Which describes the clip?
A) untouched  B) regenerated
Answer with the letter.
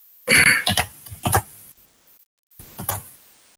A